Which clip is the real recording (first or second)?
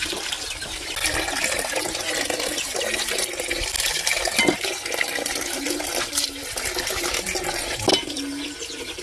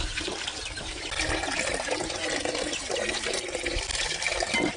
first